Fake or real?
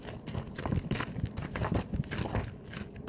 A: fake